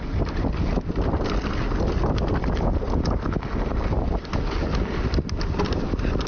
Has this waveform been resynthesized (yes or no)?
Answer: no